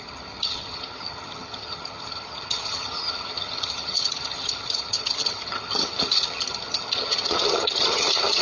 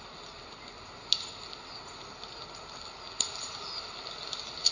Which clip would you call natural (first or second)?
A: second